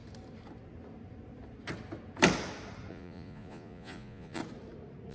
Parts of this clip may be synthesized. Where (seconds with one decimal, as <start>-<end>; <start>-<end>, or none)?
2.9-4.4